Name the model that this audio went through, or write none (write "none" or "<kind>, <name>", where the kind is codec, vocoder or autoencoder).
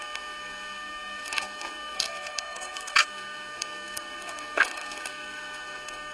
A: codec, SNAC